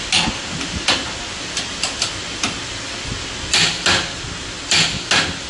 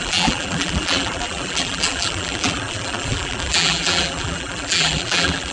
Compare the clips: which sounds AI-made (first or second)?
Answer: second